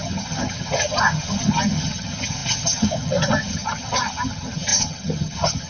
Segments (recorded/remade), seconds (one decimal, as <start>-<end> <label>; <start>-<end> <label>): 0.0-5.7 remade